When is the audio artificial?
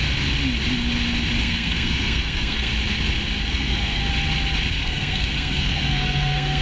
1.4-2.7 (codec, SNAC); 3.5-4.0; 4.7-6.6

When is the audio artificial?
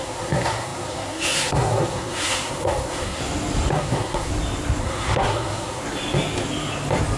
0.0-3.2 (codec, SNAC); 3.7-4.3; 4.8-5.8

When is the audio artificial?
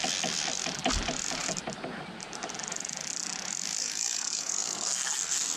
3.8-5.6 (codec, SNAC)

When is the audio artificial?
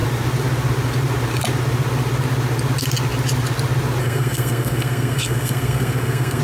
4.0-6.4 (codec, SNAC)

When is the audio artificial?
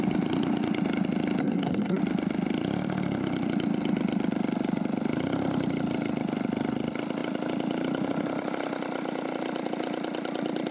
1.4-2.0 (codec, SNAC)